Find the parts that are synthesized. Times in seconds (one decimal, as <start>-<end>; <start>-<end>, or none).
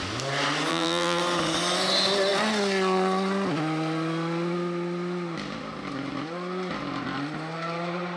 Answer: 0.7-1.2